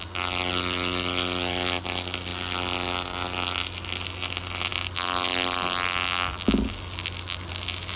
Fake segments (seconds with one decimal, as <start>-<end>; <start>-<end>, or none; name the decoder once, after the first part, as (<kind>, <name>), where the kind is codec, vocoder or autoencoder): none

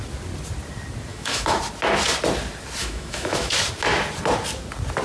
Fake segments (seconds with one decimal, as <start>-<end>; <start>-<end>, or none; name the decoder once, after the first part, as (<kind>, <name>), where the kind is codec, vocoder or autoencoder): 1.1-1.6 (autoencoder, DAC-VAE); 2.8-3.5

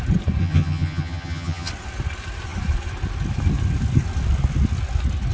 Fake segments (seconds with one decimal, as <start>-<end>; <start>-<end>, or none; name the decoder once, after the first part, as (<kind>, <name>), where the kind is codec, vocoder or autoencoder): 0.4-1.7 (vocoder, HiFi-GAN)

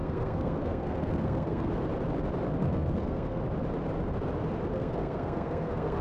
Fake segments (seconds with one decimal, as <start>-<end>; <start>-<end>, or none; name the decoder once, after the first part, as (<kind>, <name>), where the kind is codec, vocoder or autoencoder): 0.0-1.7 (codec, SNAC); 2.6-3.4; 4.7-6.0

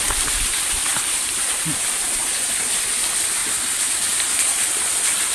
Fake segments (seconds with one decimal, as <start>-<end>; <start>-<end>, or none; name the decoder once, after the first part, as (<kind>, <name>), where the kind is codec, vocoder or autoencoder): 0.9-2.2 (vocoder, BigVGAN v2)

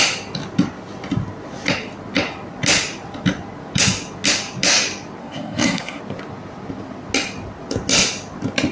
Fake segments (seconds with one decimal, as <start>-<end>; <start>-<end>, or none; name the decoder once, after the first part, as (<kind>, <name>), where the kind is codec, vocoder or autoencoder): 5.2-6.0 (codec, SNAC)

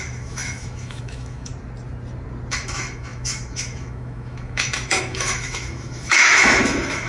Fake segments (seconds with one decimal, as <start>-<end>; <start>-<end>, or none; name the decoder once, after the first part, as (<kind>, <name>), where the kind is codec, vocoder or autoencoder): 0.0-1.5 (autoencoder, DAC-VAE); 2.5-7.1